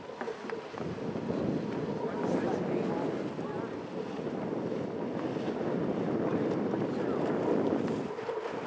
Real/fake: real